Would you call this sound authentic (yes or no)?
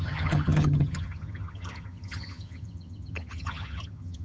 no